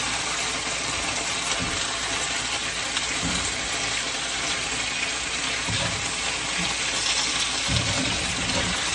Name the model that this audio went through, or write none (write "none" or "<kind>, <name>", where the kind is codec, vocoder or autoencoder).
none